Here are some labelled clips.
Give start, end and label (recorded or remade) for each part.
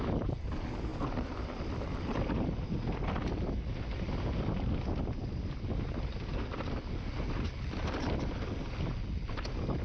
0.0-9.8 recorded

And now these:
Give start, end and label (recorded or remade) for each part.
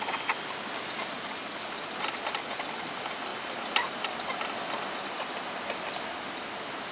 0.0-6.9 recorded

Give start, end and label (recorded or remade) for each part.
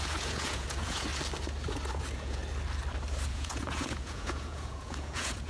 0.0-1.1 remade; 1.1-1.9 recorded; 1.9-2.4 remade; 2.4-3.3 recorded; 3.3-5.5 remade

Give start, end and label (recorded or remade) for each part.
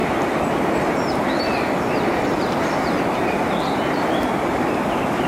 0.0-3.2 recorded; 3.2-5.3 remade